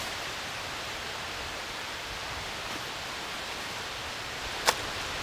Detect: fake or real fake